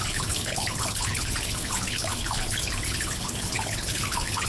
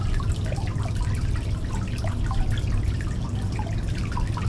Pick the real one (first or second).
second